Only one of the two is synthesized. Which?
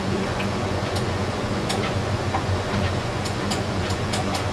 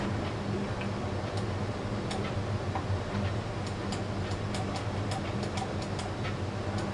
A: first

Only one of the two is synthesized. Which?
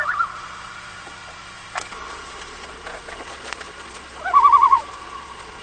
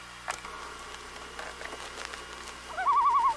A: first